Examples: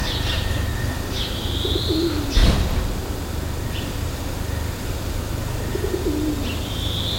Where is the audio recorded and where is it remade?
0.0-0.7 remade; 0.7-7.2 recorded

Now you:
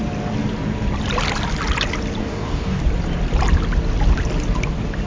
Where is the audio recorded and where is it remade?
0.0-2.2 recorded; 2.2-2.8 remade; 2.8-5.1 recorded

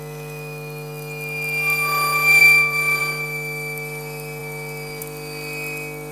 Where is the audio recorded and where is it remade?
0.0-2.4 recorded; 2.4-3.0 remade; 3.0-6.1 recorded